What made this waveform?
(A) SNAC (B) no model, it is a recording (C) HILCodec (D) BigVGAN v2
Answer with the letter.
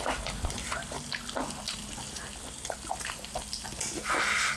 B